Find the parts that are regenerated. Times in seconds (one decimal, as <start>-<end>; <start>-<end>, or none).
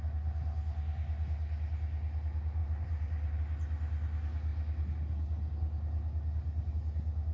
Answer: 2.6-3.4